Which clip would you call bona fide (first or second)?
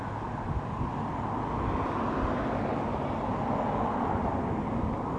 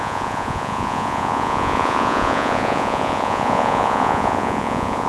first